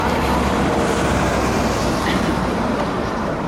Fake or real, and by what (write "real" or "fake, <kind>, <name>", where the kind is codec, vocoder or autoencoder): fake, vocoder, BigVGAN v2